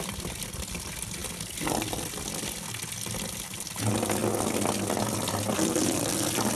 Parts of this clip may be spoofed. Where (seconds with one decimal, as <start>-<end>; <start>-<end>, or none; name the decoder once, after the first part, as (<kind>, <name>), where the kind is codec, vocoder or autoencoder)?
none